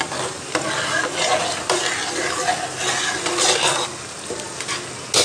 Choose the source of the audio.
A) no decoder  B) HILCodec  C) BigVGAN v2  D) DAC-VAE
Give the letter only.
A